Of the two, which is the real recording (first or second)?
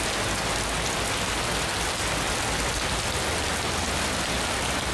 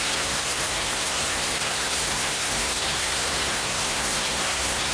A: first